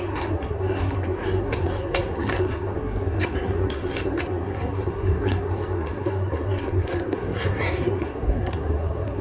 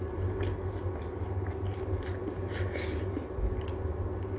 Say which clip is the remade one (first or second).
first